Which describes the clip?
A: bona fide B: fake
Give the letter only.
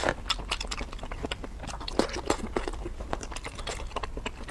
A